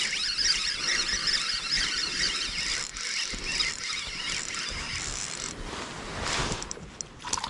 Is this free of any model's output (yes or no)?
yes